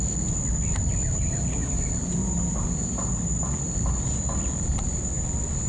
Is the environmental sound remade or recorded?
recorded